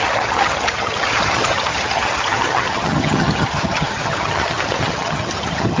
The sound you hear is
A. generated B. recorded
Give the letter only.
A